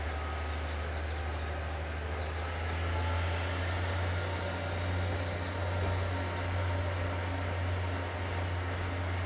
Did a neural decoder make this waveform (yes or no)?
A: no